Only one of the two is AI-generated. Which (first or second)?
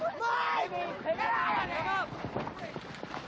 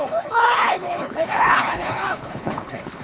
second